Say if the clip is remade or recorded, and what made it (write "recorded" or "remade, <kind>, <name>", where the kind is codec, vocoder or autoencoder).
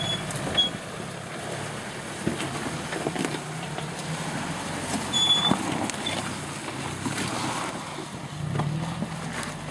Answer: recorded